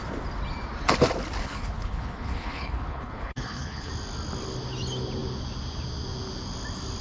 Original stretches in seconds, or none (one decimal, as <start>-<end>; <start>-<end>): 0.0-1.4; 3.9-7.0